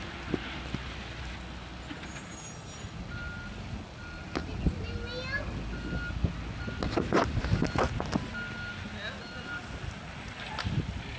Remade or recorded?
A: recorded